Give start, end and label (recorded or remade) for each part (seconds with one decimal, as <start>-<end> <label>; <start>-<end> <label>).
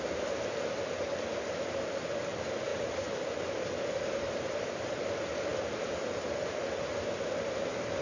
0.0-5.5 recorded; 5.5-6.6 remade; 6.6-8.0 recorded